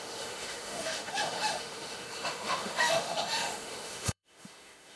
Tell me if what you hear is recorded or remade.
remade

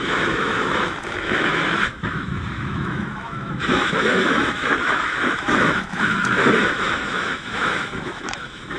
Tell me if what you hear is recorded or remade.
remade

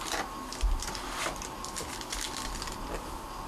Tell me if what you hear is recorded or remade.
recorded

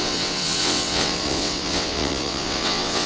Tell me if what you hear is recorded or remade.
remade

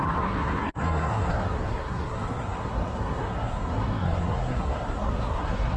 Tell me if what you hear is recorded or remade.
remade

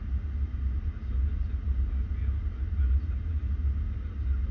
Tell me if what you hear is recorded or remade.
recorded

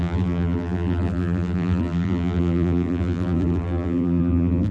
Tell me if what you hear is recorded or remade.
remade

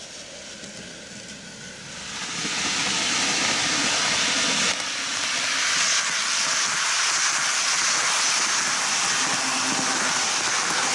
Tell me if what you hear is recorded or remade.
recorded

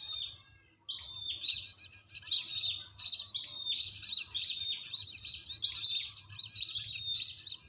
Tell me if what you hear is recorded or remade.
recorded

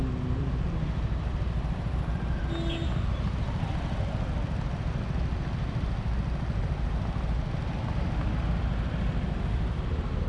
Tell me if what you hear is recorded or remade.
recorded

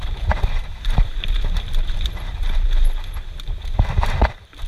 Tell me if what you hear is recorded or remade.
remade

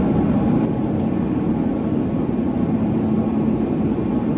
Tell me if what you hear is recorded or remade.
recorded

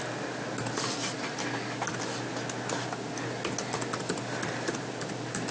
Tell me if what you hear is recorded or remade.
recorded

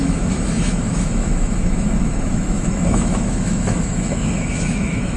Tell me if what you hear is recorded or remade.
remade